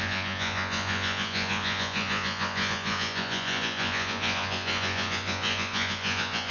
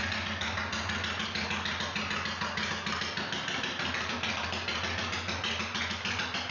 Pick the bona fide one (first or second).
second